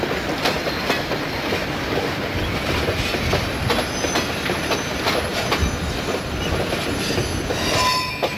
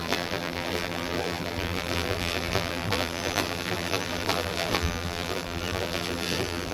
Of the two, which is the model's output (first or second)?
second